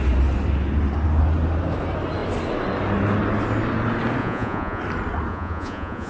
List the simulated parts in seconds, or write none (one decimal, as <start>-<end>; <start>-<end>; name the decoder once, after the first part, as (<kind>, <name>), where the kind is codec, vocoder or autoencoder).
4.2-4.8 (vocoder, Vocos); 5.3-6.1